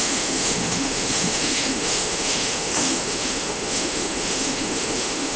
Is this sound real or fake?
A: fake